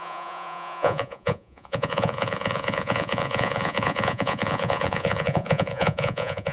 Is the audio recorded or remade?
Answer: remade